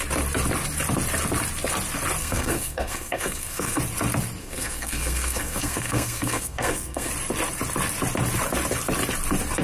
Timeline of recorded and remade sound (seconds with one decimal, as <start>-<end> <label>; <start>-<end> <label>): 0.0-2.2 recorded; 2.2-3.8 remade; 3.8-4.4 recorded; 4.4-7.1 remade; 7.1-9.6 recorded